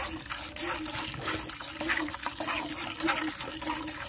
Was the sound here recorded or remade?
recorded